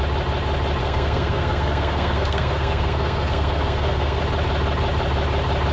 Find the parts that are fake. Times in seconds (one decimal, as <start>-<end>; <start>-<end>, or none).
0.8-4.2